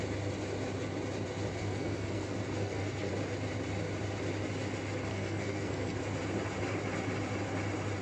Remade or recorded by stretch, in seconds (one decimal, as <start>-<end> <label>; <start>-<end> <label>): 0.0-1.6 recorded; 1.6-3.1 remade; 3.1-5.1 recorded; 5.1-6.0 remade; 6.0-8.0 recorded